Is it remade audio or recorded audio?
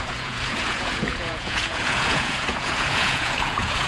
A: remade